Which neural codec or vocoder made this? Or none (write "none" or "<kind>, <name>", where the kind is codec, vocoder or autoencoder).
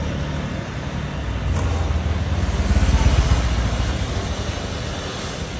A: none